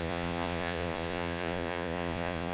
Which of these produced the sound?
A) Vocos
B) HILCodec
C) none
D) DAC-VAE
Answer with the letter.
A